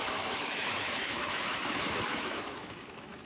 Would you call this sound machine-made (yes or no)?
yes